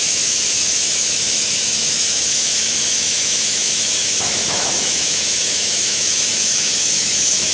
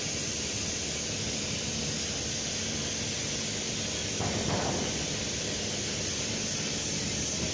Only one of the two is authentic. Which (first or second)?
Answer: second